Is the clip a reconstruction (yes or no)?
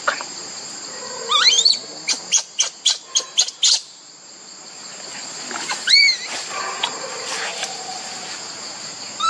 no